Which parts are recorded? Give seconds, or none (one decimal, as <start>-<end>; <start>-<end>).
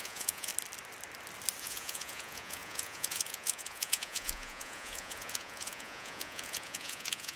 0.5-1.6